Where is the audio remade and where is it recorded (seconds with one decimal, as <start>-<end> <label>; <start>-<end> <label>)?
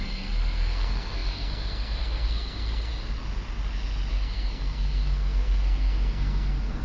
0.0-2.9 remade; 2.9-4.1 recorded; 4.1-6.8 remade